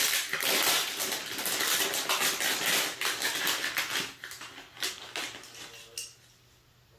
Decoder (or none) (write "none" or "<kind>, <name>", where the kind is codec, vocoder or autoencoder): none